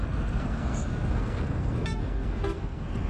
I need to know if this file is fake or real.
fake